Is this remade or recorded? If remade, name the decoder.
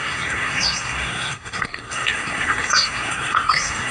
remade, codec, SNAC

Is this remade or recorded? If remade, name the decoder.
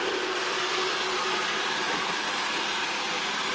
recorded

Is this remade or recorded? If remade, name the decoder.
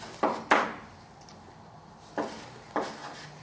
recorded